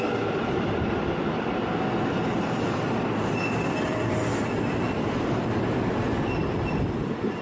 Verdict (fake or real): fake